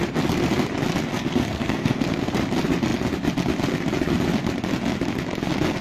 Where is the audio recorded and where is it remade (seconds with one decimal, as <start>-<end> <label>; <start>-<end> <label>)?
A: 0.0-1.1 recorded; 1.1-2.2 remade; 2.2-5.8 recorded